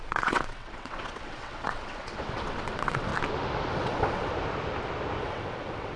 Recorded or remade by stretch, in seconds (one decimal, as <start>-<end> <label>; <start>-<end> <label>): 0.0-3.1 remade; 3.1-3.7 recorded; 3.7-4.3 remade; 4.3-5.2 recorded; 5.2-6.0 remade